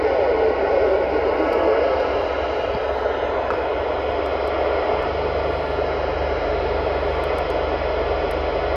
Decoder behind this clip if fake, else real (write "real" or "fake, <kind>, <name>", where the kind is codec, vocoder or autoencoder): real